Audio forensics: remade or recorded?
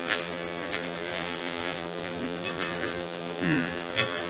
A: remade